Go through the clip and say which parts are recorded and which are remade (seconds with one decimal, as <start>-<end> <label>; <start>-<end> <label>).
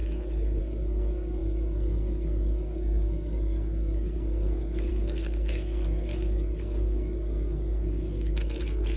0.0-9.0 remade